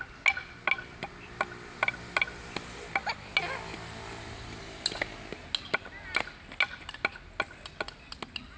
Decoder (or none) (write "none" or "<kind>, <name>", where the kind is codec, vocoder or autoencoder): none